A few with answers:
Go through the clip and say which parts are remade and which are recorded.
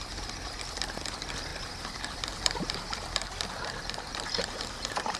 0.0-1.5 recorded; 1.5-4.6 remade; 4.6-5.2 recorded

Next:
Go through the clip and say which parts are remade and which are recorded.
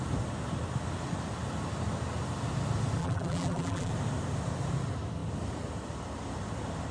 0.0-3.0 recorded; 3.0-3.9 remade; 3.9-6.9 recorded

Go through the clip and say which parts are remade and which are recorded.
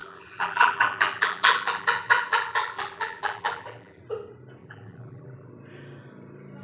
0.0-4.0 remade; 4.0-4.6 recorded; 4.6-5.5 remade; 5.5-6.6 recorded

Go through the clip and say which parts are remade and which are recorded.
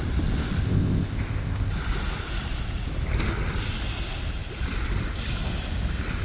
0.0-0.6 recorded; 0.6-1.7 remade; 1.7-6.2 recorded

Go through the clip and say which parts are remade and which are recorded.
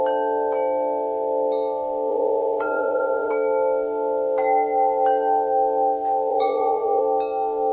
0.0-2.1 recorded; 2.1-3.3 remade; 3.3-6.3 recorded; 6.3-7.0 remade; 7.0-7.7 recorded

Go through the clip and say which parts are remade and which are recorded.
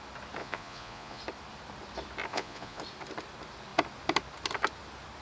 0.0-0.4 recorded; 0.4-1.2 remade; 1.2-2.3 recorded; 2.3-2.8 remade; 2.8-5.2 recorded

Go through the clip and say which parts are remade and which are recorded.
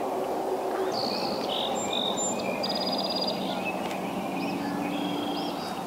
0.0-5.9 recorded